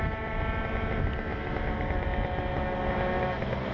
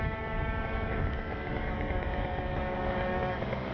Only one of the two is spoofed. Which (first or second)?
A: second